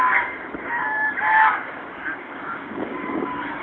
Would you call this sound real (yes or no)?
no